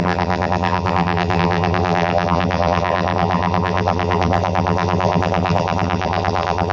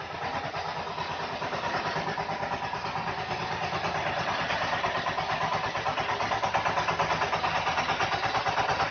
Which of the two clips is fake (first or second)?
first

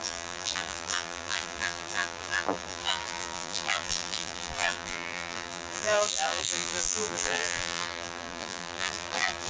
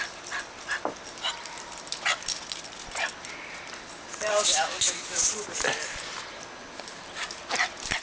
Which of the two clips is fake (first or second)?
first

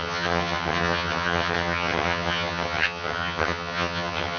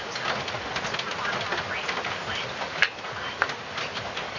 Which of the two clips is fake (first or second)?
first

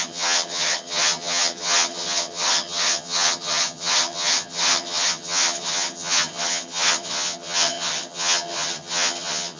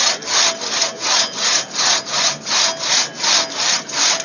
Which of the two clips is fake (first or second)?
first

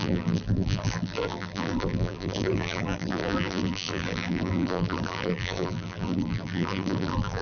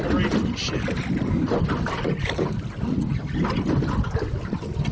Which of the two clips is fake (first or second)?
first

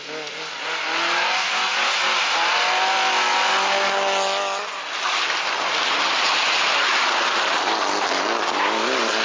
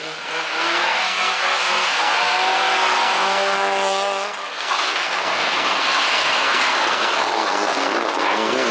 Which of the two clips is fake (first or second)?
second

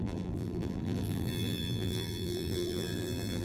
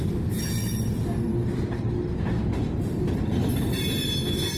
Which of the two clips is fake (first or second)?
first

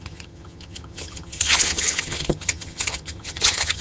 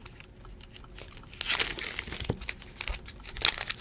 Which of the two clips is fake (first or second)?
first